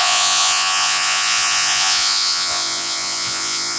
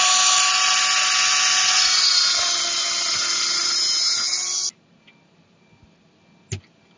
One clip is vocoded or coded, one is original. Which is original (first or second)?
second